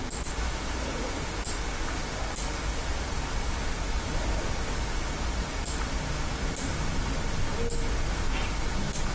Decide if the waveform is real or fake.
real